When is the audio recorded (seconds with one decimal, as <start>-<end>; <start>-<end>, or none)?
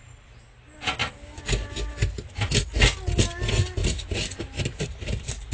0.0-5.5